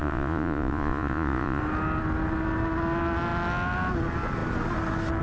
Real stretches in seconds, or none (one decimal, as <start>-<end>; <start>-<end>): 1.6-5.2